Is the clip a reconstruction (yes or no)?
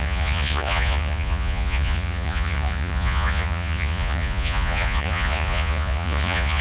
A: yes